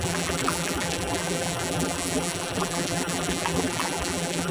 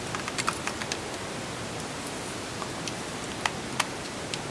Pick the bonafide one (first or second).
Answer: second